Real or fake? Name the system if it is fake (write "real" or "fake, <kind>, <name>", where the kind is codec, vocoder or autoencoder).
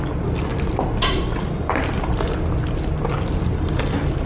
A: real